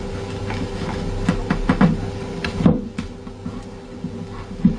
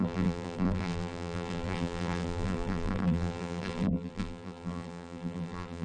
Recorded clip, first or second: first